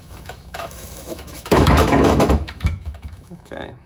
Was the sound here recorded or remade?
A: remade